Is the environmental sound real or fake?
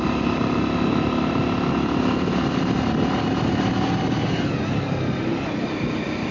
real